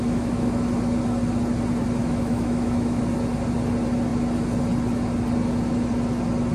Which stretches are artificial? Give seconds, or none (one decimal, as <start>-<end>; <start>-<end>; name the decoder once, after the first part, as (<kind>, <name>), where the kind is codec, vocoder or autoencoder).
0.0-0.6 (autoencoder, DAC-VAE); 2.0-3.0